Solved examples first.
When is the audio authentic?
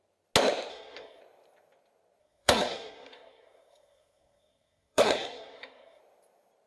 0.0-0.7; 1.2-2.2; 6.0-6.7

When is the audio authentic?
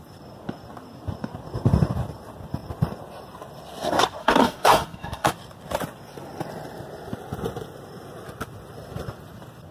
0.0-4.2; 5.3-9.7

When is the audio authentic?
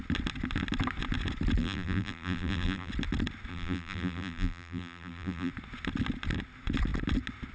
0.0-1.6; 2.9-3.5; 5.5-7.5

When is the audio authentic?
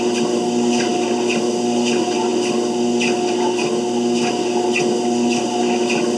0.0-6.2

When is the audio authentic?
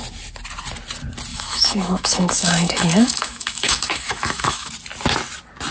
0.0-1.3; 4.7-5.7